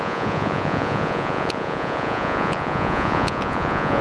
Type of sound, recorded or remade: remade